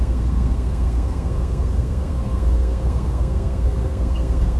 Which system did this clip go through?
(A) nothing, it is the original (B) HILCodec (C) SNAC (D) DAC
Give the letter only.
C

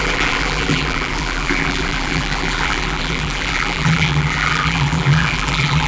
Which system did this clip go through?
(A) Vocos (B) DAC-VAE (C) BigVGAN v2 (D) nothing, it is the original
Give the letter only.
C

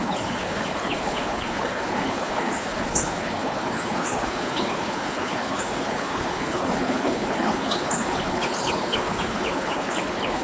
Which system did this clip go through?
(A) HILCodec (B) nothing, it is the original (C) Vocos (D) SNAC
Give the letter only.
A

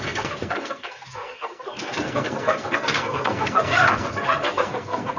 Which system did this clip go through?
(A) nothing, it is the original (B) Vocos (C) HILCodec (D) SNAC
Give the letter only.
D